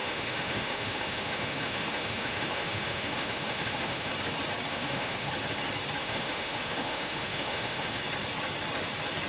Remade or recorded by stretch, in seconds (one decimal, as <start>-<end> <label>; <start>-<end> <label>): 0.0-4.1 remade; 4.1-4.7 recorded; 4.7-5.3 remade; 5.3-6.0 recorded; 6.0-8.0 remade; 8.0-9.3 recorded